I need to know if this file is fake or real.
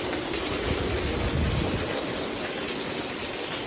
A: fake